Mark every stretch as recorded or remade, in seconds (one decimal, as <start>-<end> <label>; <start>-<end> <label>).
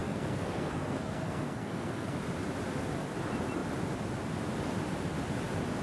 0.0-2.2 remade; 2.2-5.8 recorded